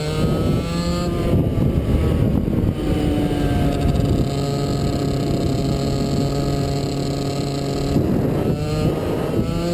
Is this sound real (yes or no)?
yes